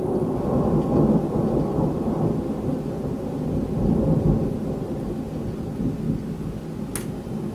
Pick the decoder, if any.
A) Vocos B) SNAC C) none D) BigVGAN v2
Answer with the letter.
C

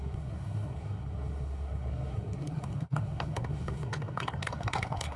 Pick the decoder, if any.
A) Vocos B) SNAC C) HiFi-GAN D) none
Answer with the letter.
B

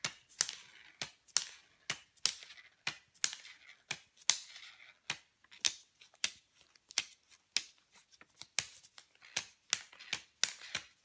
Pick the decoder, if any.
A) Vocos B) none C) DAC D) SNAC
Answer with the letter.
B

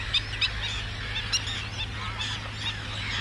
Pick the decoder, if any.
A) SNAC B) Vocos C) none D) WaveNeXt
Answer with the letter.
C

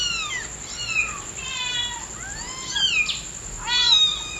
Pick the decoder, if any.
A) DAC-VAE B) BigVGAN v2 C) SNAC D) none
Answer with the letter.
D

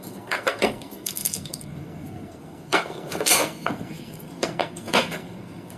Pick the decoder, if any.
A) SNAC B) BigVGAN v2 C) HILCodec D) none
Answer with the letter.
A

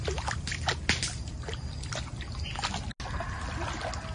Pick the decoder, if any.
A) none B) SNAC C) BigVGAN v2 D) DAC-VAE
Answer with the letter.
A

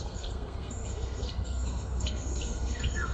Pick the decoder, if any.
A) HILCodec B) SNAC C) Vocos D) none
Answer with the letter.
B